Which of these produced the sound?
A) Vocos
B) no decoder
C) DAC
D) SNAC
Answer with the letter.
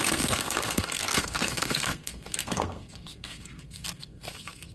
D